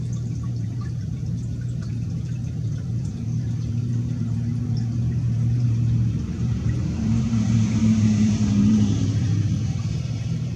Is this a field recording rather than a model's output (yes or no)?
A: no